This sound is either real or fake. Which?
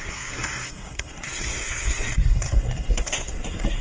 fake